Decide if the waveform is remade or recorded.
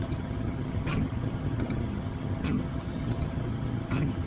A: remade